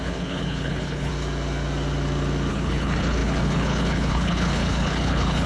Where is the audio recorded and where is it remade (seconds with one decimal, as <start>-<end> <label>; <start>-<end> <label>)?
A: 0.0-1.1 remade; 1.1-2.5 recorded; 2.5-5.5 remade